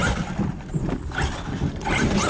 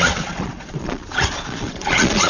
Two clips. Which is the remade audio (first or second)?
second